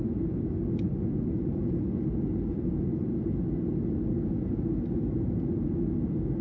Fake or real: real